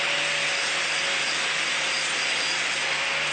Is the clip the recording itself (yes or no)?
yes